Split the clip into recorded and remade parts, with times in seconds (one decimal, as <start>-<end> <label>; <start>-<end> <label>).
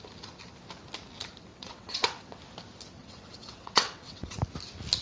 0.0-1.5 recorded; 1.5-2.4 remade; 2.4-3.0 recorded; 3.0-4.4 remade; 4.4-5.0 recorded